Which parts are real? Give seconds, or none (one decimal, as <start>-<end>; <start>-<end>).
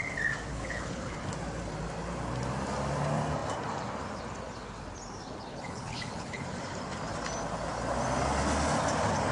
0.0-0.5; 1.2-5.5; 6.4-9.3